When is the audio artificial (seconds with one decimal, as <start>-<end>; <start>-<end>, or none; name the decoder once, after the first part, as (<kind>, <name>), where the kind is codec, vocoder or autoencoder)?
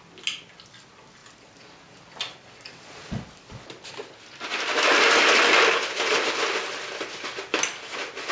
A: none